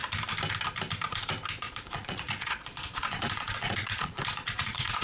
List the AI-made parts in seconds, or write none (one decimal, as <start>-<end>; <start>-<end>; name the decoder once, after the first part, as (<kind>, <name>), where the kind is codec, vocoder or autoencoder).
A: 1.6-5.0 (vocoder, Vocos)